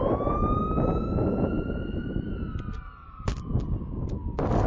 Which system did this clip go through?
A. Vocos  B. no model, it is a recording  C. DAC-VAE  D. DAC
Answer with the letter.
B